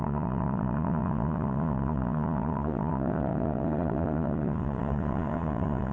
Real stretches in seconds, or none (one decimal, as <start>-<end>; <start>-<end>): none